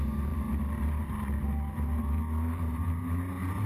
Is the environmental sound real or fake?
real